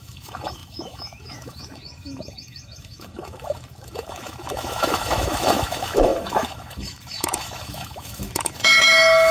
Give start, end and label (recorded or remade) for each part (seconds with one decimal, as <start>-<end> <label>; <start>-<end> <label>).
0.0-9.3 remade